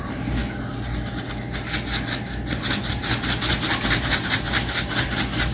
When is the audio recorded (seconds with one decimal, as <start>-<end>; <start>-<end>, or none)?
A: 0.4-2.5